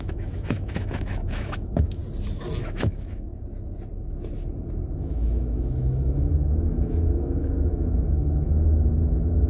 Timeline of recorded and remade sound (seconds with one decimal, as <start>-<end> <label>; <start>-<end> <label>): 0.0-2.0 remade; 2.0-2.6 recorded; 2.6-3.3 remade; 3.3-4.9 recorded; 4.9-9.5 remade